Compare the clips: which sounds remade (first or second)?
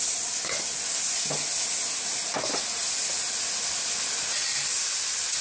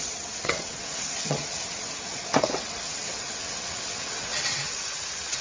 second